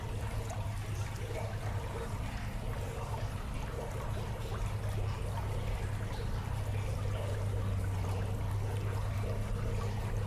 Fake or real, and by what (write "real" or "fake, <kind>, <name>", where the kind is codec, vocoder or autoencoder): real